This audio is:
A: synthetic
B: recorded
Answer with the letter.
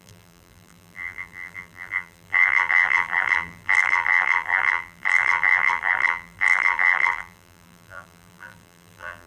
A